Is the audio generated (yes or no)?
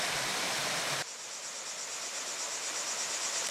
no